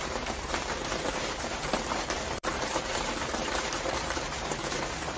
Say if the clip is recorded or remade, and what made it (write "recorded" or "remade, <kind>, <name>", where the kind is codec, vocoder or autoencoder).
remade, vocoder, BigVGAN v2